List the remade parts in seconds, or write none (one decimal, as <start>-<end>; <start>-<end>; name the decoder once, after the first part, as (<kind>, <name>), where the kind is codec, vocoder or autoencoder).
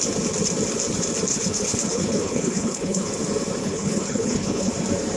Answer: 1.3-3.1 (codec, HILCodec); 3.6-4.7